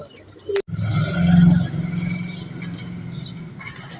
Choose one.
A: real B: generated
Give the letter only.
A